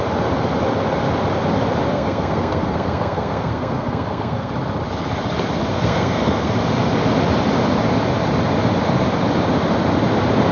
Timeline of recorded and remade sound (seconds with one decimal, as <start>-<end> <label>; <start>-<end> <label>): 0.0-1.9 recorded; 1.9-4.5 remade; 4.5-5.7 recorded; 5.7-6.5 remade; 6.5-10.5 recorded